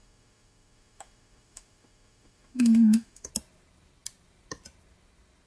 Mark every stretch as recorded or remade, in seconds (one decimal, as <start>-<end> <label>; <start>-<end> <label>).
0.0-3.3 remade; 3.3-5.5 recorded